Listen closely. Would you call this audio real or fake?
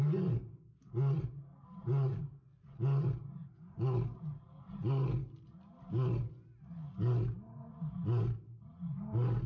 real